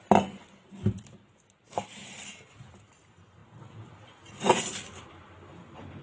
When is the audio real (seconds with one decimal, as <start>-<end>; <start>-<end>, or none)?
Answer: 0.0-6.0